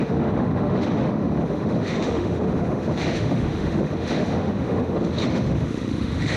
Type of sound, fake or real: fake